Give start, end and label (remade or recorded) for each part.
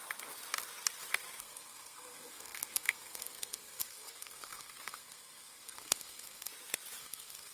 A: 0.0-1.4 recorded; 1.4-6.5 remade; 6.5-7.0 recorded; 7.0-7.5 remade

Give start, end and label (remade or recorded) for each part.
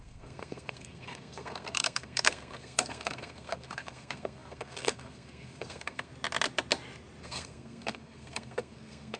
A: 0.0-6.1 remade; 6.1-7.2 recorded; 7.2-9.2 remade